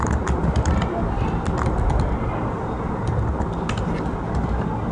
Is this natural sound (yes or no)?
yes